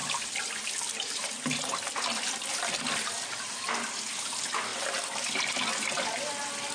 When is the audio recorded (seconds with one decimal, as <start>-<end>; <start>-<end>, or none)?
0.0-6.7